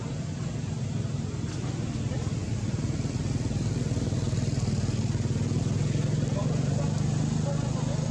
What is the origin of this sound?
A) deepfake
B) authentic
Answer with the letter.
B